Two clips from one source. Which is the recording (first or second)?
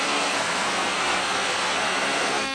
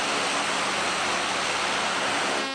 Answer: second